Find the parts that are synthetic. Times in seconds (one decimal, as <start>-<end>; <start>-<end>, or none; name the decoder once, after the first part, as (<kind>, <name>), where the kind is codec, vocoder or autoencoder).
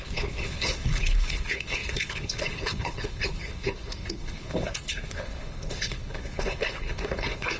0.0-7.6 (codec, HILCodec)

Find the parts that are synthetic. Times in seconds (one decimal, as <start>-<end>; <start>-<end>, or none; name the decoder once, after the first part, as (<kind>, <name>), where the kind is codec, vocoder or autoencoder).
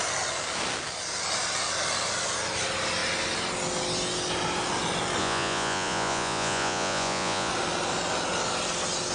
5.2-7.5 (vocoder, Vocos)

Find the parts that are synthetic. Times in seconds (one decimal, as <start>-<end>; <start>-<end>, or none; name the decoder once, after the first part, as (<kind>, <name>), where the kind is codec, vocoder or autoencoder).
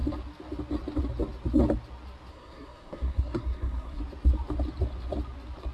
2.3-4.0 (codec, SNAC)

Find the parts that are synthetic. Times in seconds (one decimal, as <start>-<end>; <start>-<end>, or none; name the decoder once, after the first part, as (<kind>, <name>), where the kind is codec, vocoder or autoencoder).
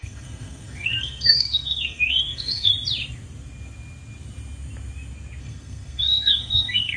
0.0-2.7 (codec, SNAC); 5.4-7.0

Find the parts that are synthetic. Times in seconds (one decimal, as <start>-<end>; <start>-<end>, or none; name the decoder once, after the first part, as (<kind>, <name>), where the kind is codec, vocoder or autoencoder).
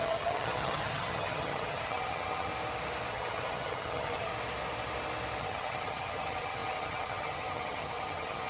0.0-2.5 (vocoder, HiFi-GAN); 3.1-4.3; 5.4-8.5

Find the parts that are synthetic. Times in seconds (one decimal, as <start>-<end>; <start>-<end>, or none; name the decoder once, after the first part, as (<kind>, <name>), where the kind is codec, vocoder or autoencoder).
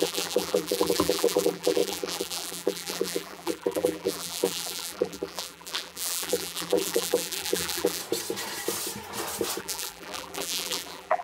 0.0-8.0 (vocoder, BigVGAN v2); 9.6-11.2